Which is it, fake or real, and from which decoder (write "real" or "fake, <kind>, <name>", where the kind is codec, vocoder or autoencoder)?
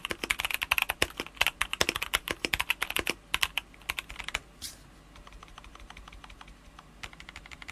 real